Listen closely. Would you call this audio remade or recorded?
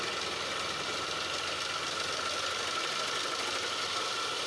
recorded